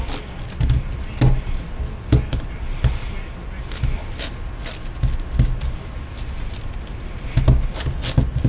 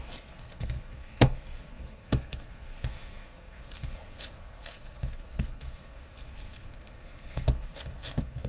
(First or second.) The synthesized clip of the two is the second